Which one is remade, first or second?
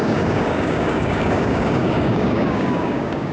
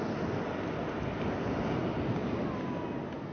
first